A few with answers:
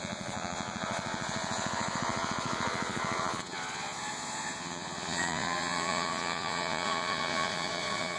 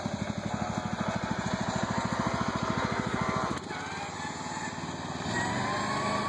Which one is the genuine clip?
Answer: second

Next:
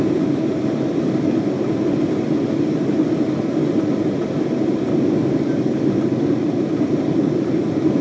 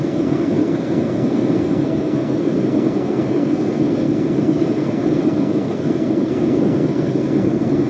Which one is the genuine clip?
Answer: first